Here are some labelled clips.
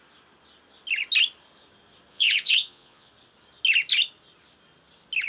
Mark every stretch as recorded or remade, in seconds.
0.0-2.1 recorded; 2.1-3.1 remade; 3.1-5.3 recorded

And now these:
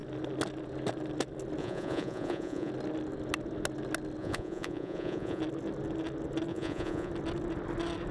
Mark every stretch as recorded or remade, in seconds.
0.0-1.6 recorded; 1.6-2.7 remade; 2.7-4.2 recorded; 4.2-5.4 remade; 5.4-6.5 recorded; 6.5-7.1 remade; 7.1-8.1 recorded

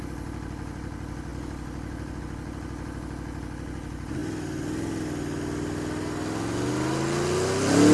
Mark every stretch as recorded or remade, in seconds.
0.0-7.9 recorded

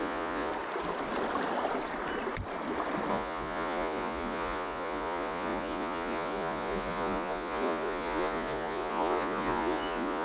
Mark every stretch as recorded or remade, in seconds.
0.0-0.5 remade; 0.5-3.1 recorded; 3.1-10.2 remade

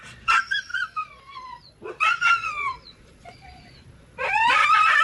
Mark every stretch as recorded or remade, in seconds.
0.0-5.0 remade

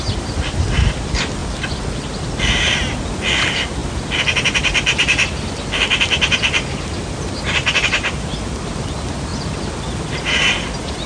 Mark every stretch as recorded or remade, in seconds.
0.0-11.1 recorded

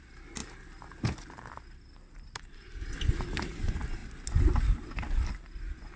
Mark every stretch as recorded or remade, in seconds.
0.0-6.0 recorded